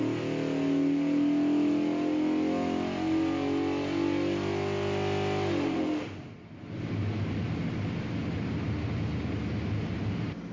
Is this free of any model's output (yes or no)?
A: yes